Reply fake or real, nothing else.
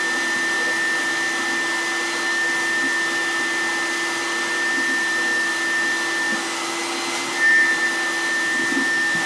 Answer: real